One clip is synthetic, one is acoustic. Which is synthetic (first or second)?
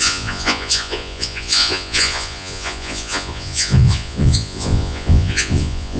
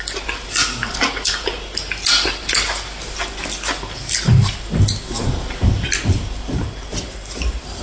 first